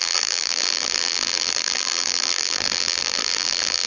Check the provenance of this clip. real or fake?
fake